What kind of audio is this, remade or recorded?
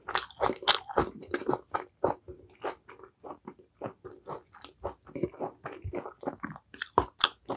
recorded